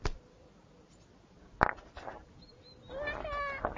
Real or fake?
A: real